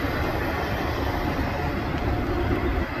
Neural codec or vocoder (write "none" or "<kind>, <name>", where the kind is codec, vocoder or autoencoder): none